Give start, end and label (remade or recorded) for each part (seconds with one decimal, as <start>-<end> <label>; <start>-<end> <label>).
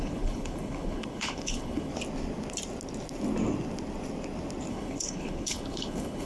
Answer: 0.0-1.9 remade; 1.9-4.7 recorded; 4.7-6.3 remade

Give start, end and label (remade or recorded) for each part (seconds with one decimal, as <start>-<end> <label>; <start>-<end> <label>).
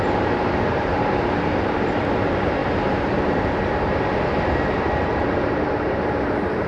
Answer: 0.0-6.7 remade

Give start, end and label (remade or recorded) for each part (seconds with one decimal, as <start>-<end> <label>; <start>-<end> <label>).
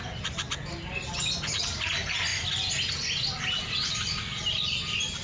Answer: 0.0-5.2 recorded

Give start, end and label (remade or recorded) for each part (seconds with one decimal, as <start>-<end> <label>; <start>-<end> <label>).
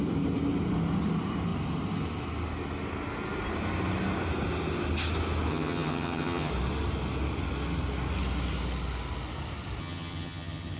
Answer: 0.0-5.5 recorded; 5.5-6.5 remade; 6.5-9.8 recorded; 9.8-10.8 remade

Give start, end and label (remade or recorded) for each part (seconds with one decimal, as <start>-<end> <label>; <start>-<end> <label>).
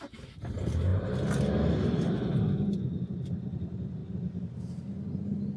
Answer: 0.0-4.0 recorded; 4.0-4.6 remade; 4.6-5.6 recorded